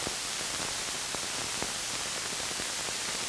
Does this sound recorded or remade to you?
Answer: recorded